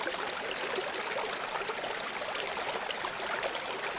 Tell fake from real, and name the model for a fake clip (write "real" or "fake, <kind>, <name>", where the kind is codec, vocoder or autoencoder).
real